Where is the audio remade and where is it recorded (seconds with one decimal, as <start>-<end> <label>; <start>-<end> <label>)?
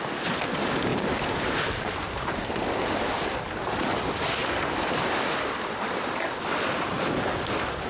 0.0-0.9 recorded; 0.9-2.6 remade; 2.6-4.4 recorded; 4.4-7.9 remade